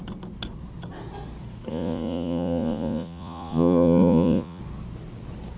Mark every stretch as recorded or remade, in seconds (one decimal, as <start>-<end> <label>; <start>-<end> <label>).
0.0-1.7 recorded; 1.7-4.6 remade; 4.6-5.6 recorded

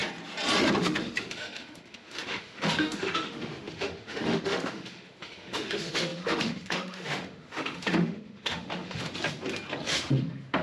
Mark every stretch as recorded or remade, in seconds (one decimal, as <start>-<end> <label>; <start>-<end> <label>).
0.0-0.8 recorded; 0.8-9.1 remade; 9.1-9.9 recorded; 9.9-10.6 remade

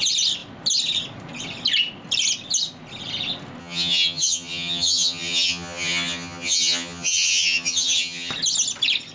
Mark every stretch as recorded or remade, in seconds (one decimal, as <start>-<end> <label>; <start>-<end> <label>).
0.0-3.6 recorded; 3.6-8.3 remade; 8.3-9.1 recorded

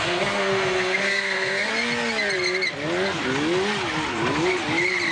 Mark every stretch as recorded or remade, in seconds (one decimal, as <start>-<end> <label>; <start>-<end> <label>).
0.0-1.7 remade; 1.7-5.1 recorded

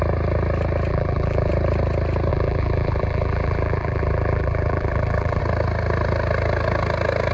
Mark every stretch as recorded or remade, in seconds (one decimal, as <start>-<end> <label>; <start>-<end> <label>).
0.0-0.9 recorded; 0.9-1.5 remade; 1.5-2.3 recorded; 2.3-5.4 remade; 5.4-7.3 recorded

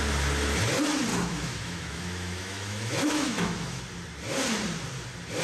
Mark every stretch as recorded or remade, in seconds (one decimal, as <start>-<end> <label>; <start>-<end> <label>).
0.0-1.1 recorded; 1.1-3.8 remade; 3.8-5.4 recorded

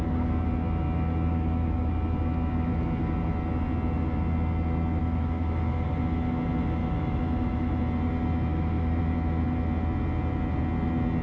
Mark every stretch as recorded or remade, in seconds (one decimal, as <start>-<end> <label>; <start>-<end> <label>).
0.0-1.3 recorded; 1.3-1.9 remade; 1.9-5.0 recorded; 5.0-5.9 remade; 5.9-6.8 recorded; 6.8-7.8 remade; 7.8-8.5 recorded; 8.5-9.0 remade; 9.0-11.2 recorded